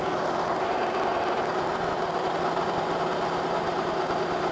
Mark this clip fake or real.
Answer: real